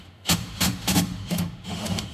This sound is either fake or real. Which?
fake